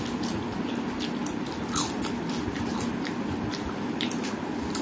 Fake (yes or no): no